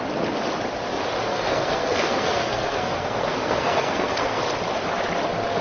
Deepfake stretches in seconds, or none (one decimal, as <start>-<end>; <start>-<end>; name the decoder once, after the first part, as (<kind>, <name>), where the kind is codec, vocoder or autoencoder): 1.3-4.4 (codec, SNAC)